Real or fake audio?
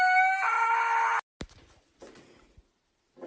real